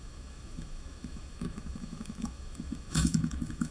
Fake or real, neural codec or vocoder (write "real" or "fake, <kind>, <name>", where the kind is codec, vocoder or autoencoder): fake, autoencoder, DAC-VAE